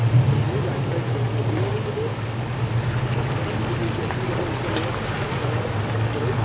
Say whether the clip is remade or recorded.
recorded